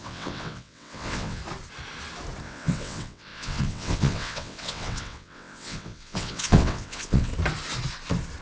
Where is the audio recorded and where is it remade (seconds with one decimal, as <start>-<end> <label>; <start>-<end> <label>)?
0.0-1.4 remade; 1.4-2.4 recorded; 2.4-7.3 remade; 7.3-8.4 recorded